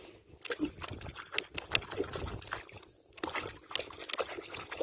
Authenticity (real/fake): real